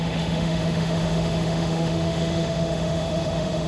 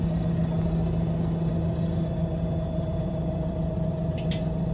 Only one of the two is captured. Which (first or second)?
second